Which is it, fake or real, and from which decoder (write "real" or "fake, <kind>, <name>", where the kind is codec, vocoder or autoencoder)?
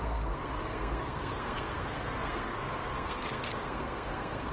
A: fake, codec, SNAC